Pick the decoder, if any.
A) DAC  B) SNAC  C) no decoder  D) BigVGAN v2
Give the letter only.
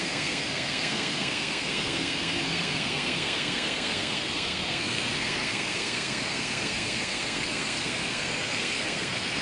B